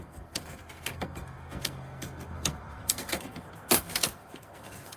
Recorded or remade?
remade